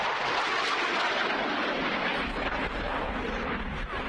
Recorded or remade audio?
recorded